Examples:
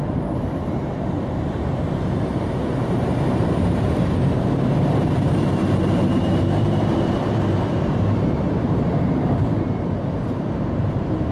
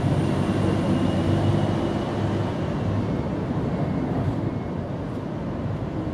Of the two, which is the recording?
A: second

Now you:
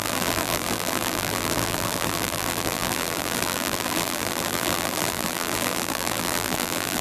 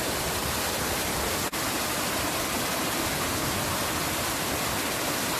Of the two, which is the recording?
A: second